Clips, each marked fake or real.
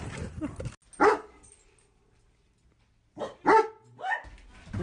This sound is real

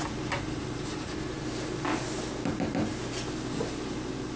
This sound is real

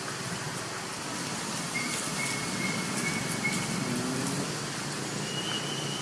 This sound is real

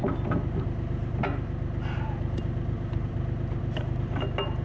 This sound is real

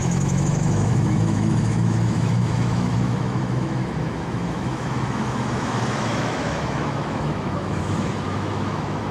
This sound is fake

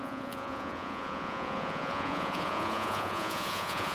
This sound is fake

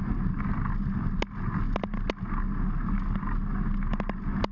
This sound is real